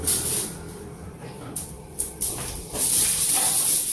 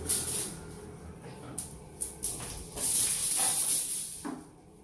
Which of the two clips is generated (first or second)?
first